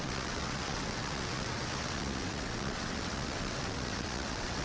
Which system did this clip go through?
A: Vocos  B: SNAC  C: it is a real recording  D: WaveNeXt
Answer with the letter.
D